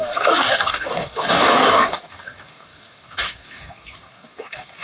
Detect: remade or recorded remade